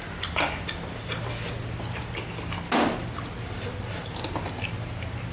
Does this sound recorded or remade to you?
remade